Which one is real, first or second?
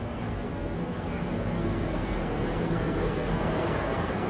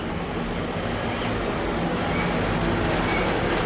second